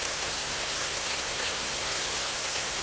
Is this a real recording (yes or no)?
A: no